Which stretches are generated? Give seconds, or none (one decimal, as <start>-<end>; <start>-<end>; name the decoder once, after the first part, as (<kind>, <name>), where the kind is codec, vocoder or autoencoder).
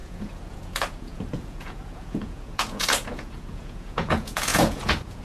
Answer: 0.0-5.2 (vocoder, Vocos)